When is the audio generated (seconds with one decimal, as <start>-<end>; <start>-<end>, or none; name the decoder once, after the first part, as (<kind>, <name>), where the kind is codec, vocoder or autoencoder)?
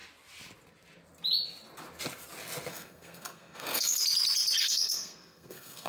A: 2.7-4.0 (codec, SNAC); 4.6-5.9